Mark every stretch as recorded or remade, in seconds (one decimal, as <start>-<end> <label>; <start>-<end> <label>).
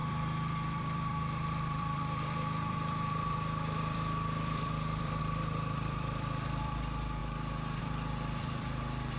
0.0-7.2 remade; 7.2-7.8 recorded; 7.8-9.2 remade